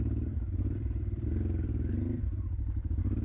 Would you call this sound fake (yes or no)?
yes